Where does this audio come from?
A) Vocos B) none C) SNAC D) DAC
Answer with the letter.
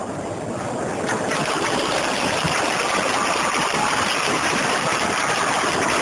B